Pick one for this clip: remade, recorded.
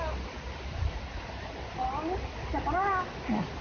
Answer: remade